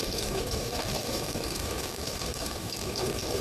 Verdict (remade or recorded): remade